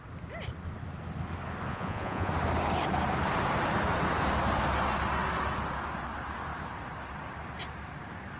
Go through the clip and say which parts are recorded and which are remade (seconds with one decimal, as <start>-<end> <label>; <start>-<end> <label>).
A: 0.0-1.7 recorded; 1.7-2.3 remade; 2.3-8.4 recorded